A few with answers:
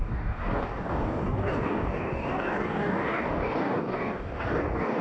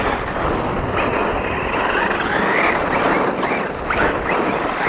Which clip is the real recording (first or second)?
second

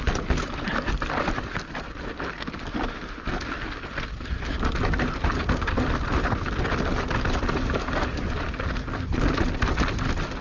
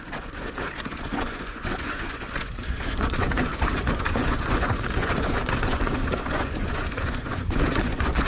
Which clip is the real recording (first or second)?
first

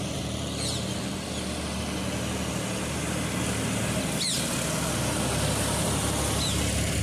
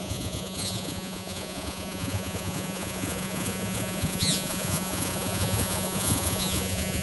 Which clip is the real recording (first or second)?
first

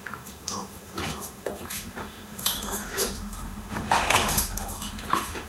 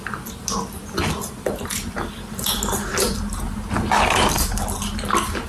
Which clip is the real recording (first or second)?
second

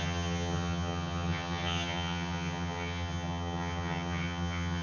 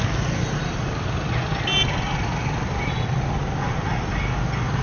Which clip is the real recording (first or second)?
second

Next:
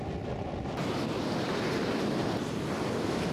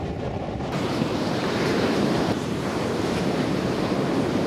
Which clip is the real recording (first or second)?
first